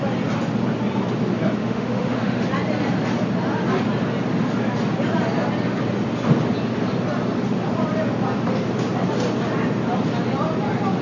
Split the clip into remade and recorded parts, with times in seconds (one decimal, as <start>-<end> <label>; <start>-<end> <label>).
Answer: 0.0-1.6 recorded; 1.6-2.5 remade; 2.5-11.0 recorded